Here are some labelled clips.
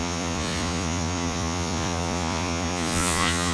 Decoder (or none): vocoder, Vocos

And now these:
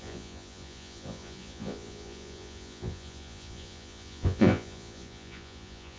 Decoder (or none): vocoder, Vocos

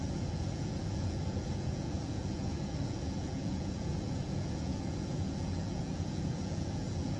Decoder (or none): vocoder, Vocos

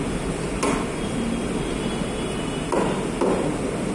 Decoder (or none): none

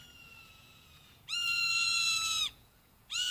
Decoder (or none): vocoder, Vocos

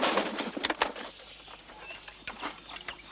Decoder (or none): none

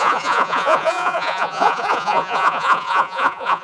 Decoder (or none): vocoder, Vocos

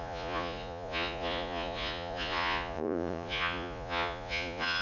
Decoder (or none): vocoder, Vocos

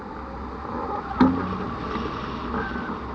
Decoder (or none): none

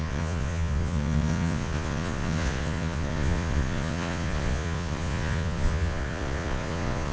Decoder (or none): vocoder, Vocos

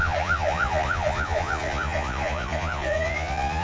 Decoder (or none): vocoder, Vocos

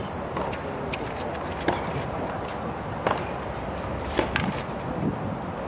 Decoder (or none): none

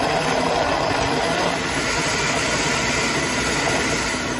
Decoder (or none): none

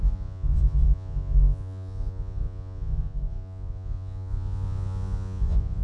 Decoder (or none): vocoder, Vocos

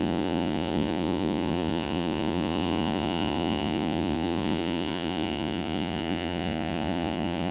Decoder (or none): vocoder, Vocos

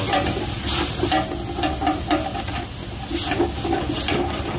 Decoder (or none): none